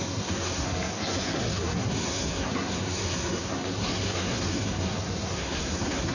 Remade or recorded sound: remade